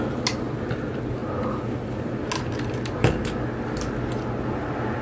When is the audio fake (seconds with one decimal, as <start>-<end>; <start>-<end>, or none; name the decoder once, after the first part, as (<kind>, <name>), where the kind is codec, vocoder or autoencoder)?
none